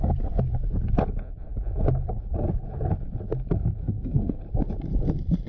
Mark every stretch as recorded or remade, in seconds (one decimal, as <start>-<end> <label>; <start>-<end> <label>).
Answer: 0.0-3.8 recorded; 3.8-4.4 remade; 4.4-5.5 recorded